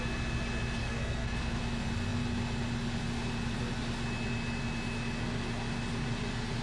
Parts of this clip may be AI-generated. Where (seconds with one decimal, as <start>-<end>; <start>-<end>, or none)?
0.8-1.6